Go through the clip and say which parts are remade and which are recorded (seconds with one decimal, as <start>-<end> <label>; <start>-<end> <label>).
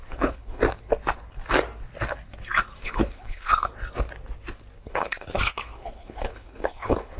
0.0-0.6 remade; 0.6-2.8 recorded; 2.8-3.7 remade; 3.7-4.8 recorded; 4.8-7.2 remade